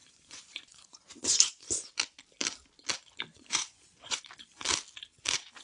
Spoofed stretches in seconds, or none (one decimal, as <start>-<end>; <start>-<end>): 0.0-1.7; 3.3-4.2